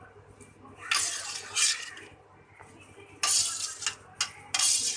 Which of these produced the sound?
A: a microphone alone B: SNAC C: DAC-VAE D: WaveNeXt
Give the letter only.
A